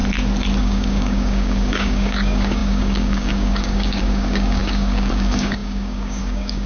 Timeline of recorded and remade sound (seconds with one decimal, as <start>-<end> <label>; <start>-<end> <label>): 0.0-0.6 recorded; 0.6-6.7 remade